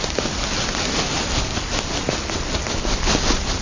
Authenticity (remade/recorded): recorded